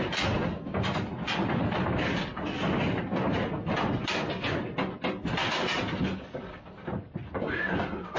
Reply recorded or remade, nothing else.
recorded